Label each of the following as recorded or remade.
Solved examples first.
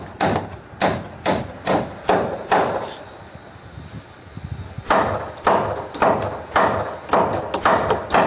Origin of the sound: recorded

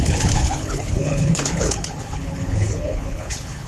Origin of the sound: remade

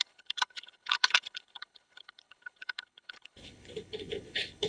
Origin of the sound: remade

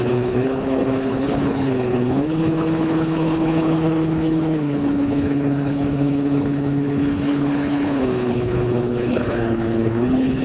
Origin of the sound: remade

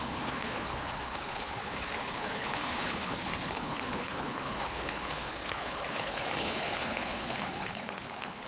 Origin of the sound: remade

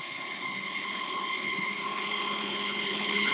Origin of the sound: remade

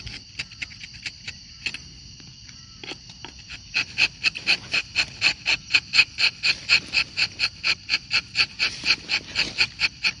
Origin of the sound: recorded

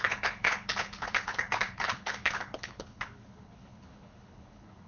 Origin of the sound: remade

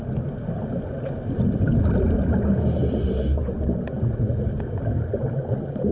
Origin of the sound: recorded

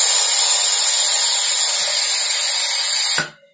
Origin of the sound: recorded